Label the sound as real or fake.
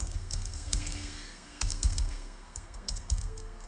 fake